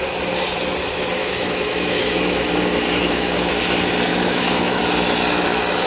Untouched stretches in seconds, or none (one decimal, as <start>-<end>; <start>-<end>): 0.0-1.2; 2.5-3.0; 3.5-4.1; 4.8-5.9